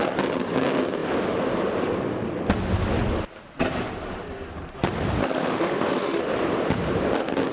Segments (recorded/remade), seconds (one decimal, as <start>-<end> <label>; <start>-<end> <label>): 0.0-5.2 recorded; 5.2-6.2 remade; 6.2-7.5 recorded